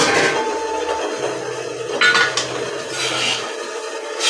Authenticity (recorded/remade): recorded